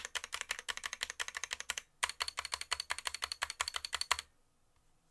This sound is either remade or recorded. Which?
recorded